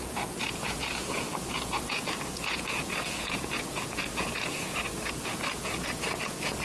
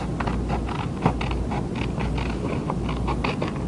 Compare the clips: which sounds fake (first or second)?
first